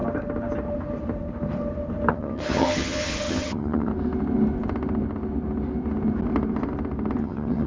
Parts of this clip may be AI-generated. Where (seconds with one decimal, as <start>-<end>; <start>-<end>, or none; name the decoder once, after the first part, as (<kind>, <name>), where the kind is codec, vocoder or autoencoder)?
2.1-3.9 (vocoder, HiFi-GAN); 7.2-7.7